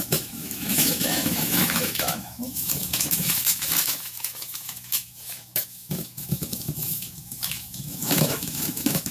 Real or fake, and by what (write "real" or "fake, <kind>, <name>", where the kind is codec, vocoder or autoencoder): fake, autoencoder, DAC-VAE